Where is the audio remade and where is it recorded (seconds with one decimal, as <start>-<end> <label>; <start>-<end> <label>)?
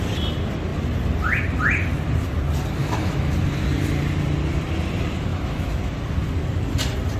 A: 0.0-2.8 recorded; 2.8-3.3 remade; 3.3-5.3 recorded; 5.3-5.9 remade; 5.9-7.2 recorded